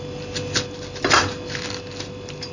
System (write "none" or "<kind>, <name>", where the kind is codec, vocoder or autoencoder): vocoder, BigVGAN v2